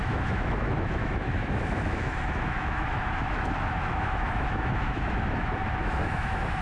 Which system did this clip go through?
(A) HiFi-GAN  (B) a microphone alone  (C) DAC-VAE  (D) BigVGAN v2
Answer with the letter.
C